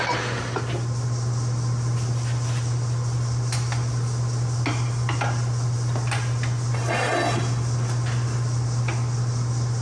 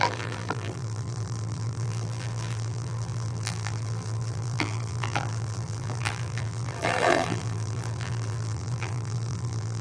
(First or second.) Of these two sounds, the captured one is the first